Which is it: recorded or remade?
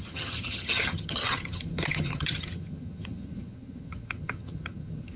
remade